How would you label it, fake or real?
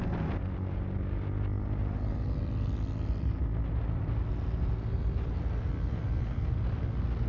real